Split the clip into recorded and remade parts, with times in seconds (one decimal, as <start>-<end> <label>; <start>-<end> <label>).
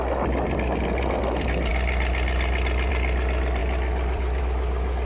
0.0-1.7 remade; 1.7-2.9 recorded; 2.9-5.0 remade